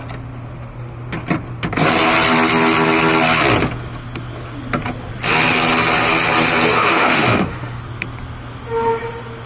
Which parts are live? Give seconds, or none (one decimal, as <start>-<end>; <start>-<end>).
0.0-6.8; 7.8-9.5